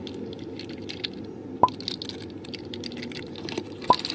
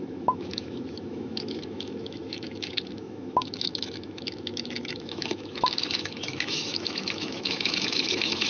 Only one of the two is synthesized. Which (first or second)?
second